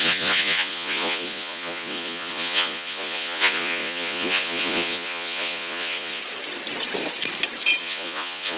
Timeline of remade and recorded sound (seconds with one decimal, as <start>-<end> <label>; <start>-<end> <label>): 0.0-6.2 remade; 6.2-7.8 recorded; 7.8-8.6 remade